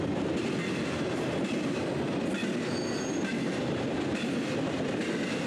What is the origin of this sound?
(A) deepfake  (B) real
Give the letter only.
B